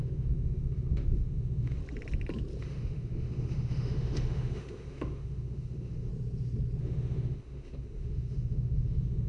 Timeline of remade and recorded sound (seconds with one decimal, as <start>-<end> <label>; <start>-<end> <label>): 0.0-1.8 remade; 1.8-2.6 recorded; 2.6-6.1 remade; 6.1-6.8 recorded; 6.8-9.3 remade